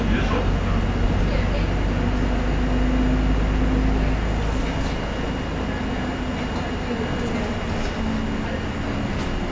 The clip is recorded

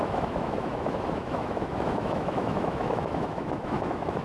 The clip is remade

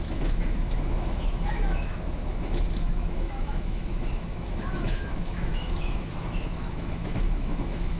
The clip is remade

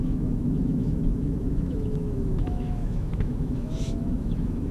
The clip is remade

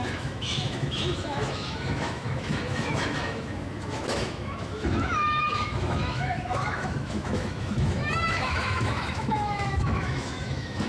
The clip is remade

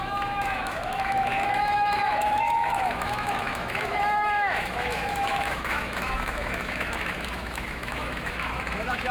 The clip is remade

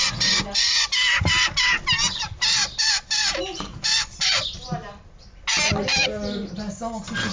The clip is recorded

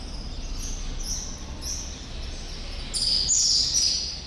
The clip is recorded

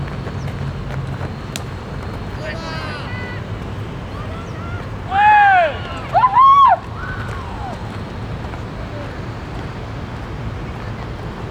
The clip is recorded